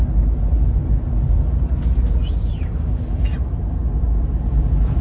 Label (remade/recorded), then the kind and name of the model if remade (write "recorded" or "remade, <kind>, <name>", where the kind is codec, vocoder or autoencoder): recorded